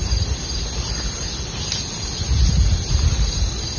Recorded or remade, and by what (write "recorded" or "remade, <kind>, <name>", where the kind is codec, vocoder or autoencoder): recorded